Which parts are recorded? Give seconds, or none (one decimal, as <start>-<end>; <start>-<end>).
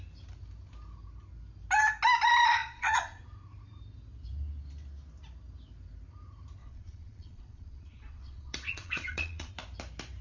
0.0-2.6; 3.2-6.6; 9.5-10.2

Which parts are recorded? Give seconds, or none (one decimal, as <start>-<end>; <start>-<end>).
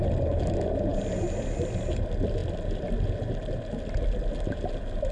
0.0-5.1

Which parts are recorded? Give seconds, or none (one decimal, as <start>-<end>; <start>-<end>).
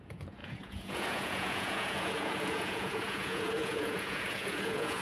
none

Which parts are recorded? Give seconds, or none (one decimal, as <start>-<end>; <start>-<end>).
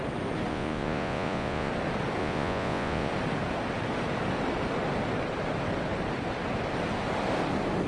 0.0-0.5; 1.7-2.2; 3.1-7.9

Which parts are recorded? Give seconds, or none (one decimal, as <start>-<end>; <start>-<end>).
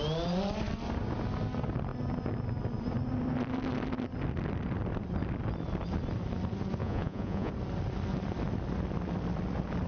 0.0-6.8; 7.5-9.9